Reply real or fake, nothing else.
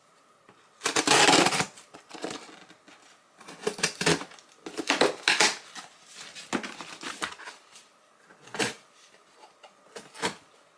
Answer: real